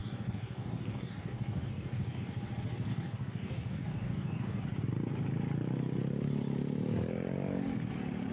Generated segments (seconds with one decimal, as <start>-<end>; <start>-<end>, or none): 0.0-2.4; 2.9-4.6